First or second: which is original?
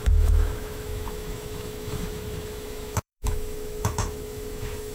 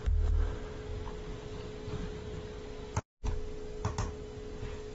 second